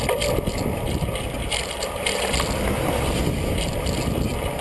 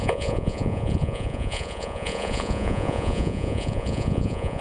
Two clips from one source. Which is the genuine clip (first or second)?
first